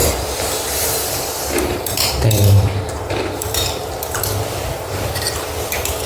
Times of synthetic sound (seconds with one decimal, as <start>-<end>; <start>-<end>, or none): 0.0-3.7; 4.7-5.4